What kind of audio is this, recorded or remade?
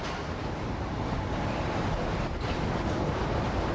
recorded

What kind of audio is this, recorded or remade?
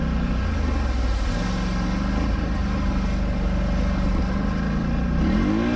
recorded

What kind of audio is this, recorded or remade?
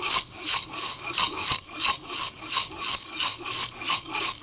remade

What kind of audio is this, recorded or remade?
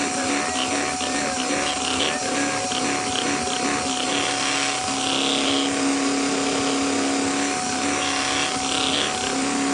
recorded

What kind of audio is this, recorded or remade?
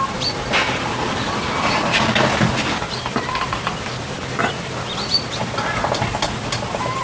recorded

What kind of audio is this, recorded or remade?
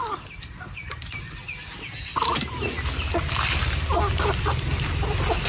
recorded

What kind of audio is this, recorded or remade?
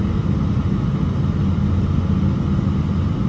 recorded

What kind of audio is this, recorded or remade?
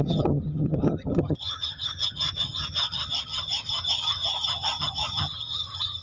remade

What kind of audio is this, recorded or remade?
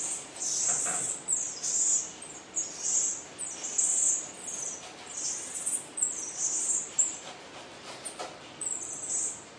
recorded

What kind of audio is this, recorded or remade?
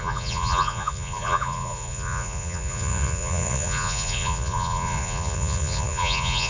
remade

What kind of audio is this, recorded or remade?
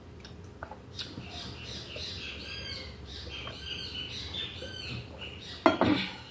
recorded